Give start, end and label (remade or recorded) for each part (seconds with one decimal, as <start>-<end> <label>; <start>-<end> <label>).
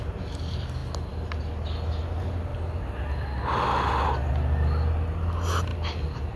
0.0-6.4 recorded